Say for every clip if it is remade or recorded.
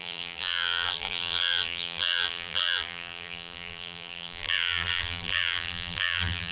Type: remade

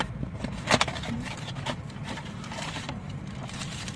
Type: remade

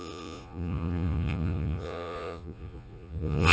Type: remade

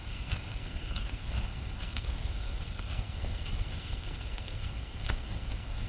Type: remade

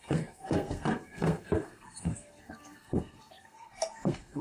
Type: remade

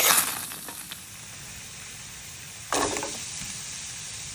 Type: recorded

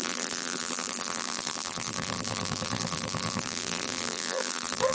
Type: remade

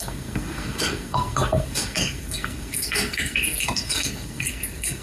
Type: remade